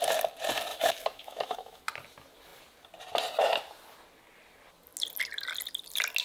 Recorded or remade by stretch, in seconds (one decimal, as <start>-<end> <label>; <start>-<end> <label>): 0.0-0.7 recorded; 0.7-1.8 remade; 1.8-6.2 recorded